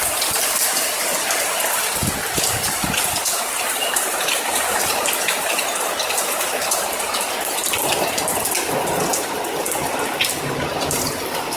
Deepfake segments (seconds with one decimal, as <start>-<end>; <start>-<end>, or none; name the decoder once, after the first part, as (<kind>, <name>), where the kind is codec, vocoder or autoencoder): 2.2-6.8 (vocoder, BigVGAN v2)